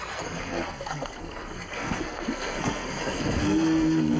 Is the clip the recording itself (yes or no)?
no